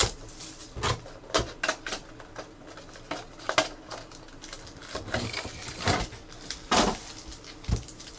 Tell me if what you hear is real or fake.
real